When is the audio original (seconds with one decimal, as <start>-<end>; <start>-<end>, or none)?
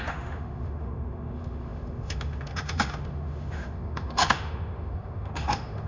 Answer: none